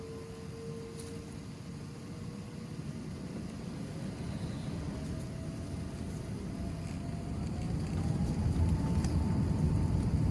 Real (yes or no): yes